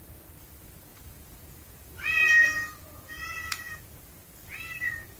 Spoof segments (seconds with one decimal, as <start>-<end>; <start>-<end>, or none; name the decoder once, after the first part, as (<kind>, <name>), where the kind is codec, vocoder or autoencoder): 0.9-3.8 (vocoder, Vocos)